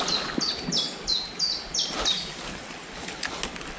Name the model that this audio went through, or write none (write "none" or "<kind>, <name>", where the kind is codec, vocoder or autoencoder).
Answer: none